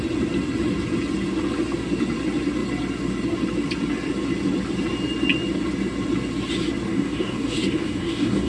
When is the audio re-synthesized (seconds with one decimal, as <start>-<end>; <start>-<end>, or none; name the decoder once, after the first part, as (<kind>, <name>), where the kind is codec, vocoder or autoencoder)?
6.9-8.5 (codec, DAC)